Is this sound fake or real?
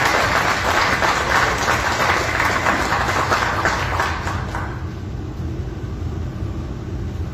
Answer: real